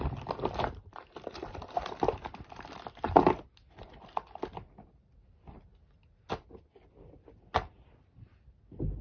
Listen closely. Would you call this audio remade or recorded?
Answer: recorded